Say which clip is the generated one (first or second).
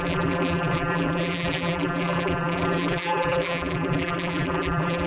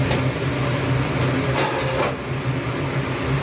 first